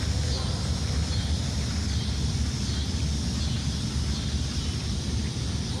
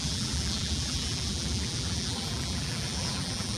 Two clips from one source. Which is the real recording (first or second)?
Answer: first